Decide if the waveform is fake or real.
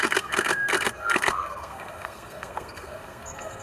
fake